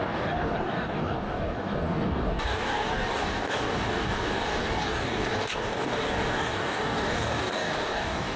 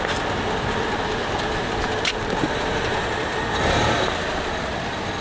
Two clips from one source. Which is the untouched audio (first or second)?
second